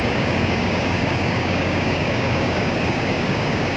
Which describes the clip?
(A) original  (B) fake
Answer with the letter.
B